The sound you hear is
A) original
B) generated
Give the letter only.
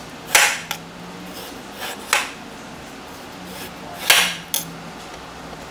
A